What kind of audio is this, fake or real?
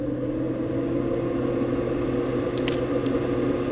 real